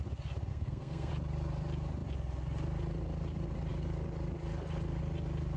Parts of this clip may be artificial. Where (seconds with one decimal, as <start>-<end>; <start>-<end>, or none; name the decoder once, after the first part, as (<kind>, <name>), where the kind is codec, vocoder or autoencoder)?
0.5-1.1 (codec, SNAC)